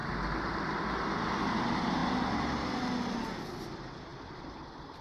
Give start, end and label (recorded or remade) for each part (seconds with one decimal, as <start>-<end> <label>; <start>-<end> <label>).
0.0-5.0 recorded